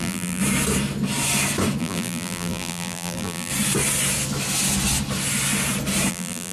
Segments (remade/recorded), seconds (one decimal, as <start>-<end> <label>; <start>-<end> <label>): 0.0-0.4 remade; 0.4-1.8 recorded; 1.8-3.5 remade; 3.5-6.1 recorded; 6.1-6.5 remade